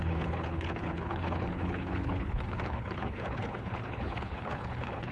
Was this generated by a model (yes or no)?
yes